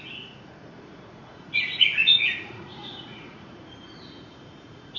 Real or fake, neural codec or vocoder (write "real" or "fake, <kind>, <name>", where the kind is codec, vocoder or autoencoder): fake, vocoder, Vocos